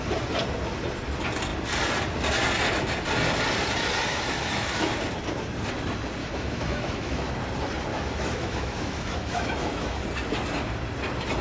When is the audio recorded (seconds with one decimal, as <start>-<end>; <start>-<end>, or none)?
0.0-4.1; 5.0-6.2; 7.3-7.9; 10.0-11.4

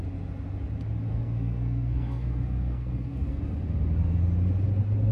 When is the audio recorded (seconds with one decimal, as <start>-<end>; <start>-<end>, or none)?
0.0-1.1; 3.4-5.1

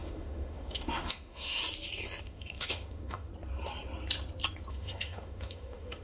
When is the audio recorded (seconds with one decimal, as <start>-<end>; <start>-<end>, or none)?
1.6-2.2; 3.3-4.7

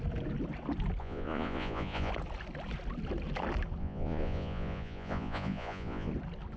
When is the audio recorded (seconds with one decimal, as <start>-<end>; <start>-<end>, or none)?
0.0-1.0; 2.1-3.8; 6.1-6.6

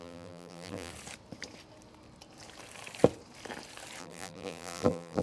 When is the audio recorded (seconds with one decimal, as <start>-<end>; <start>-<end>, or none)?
0.9-4.0

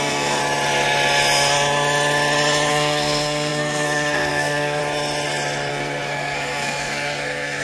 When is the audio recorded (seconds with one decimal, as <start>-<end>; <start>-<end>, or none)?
0.4-2.7; 4.8-5.7

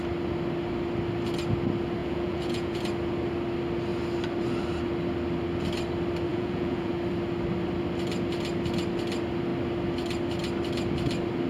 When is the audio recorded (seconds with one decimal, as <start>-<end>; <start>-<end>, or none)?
0.0-2.0; 2.8-6.3; 6.9-11.5

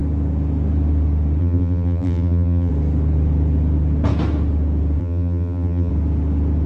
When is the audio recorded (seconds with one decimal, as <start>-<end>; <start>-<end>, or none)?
0.0-1.4; 2.7-5.0; 5.9-6.7